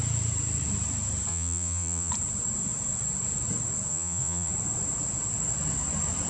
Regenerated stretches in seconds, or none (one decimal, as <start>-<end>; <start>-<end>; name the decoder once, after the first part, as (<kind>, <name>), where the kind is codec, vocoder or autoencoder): 1.3-2.1 (vocoder, Vocos); 3.9-4.5